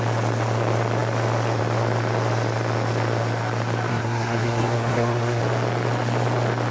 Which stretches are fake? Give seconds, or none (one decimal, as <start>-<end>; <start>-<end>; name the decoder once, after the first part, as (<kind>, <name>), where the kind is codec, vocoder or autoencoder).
3.9-5.4 (codec, SNAC)